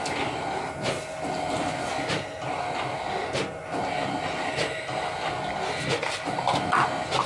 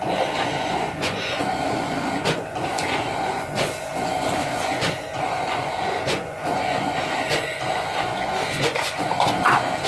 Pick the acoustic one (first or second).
first